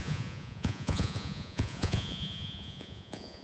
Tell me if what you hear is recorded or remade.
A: remade